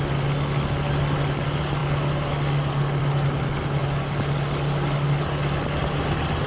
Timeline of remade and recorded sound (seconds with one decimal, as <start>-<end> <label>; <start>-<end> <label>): 0.0-6.5 recorded